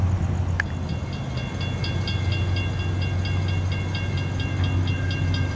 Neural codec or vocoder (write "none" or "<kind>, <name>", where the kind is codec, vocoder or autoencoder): none